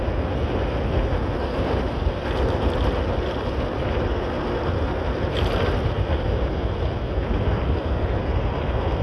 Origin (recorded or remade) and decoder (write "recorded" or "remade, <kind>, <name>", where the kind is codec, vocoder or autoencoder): recorded